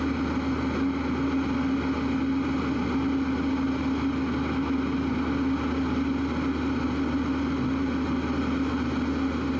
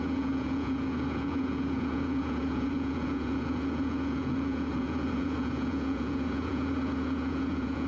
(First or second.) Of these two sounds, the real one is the first